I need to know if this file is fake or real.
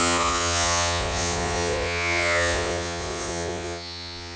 fake